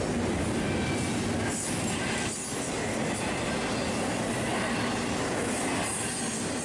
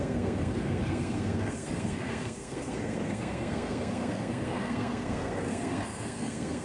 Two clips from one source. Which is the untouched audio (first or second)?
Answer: first